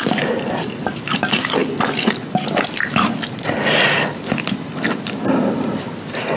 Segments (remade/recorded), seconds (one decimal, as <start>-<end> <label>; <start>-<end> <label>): 0.0-6.4 recorded